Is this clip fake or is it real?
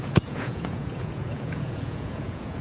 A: fake